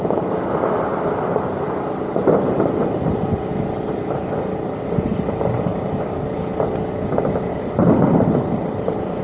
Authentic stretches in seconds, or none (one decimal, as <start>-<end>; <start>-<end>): 0.9-4.8; 5.7-7.5